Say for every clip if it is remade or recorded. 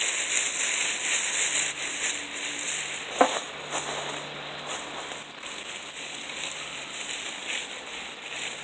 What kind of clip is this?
recorded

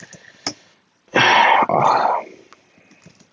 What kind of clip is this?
recorded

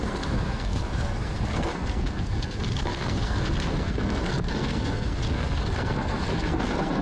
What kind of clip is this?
remade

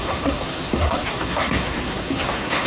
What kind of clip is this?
remade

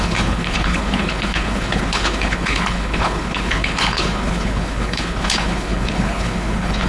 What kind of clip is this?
remade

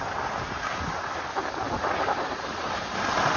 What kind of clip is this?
recorded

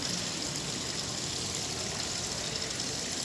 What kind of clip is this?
recorded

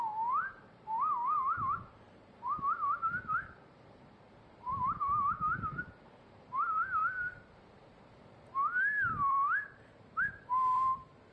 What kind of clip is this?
remade